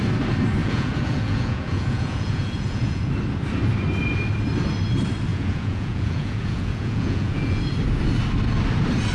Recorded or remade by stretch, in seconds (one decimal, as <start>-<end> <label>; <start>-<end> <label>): 0.0-0.6 recorded; 0.6-3.1 remade; 3.1-5.3 recorded; 5.3-7.6 remade; 7.6-9.1 recorded